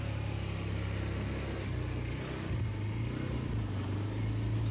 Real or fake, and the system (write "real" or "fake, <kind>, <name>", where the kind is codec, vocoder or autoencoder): real